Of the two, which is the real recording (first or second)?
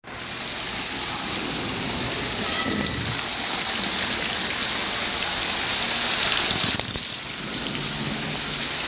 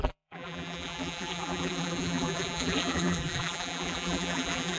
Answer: first